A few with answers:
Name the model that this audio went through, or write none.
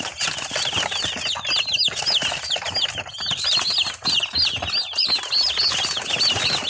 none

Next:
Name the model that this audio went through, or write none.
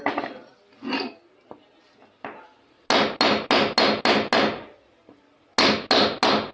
none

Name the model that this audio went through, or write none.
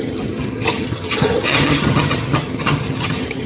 vocoder, HiFi-GAN